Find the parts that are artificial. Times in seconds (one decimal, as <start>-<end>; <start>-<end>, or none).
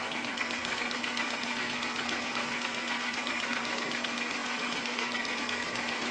0.0-6.1